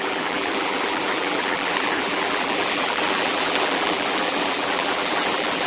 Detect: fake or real fake